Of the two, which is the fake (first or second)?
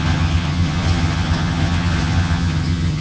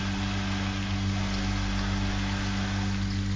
first